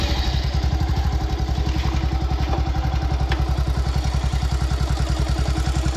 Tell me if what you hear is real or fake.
real